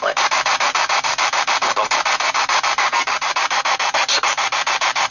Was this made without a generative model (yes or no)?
no